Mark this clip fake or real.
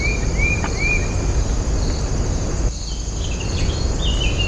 real